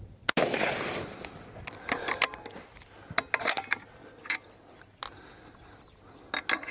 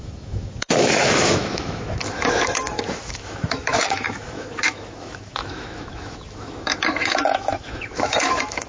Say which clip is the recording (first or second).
first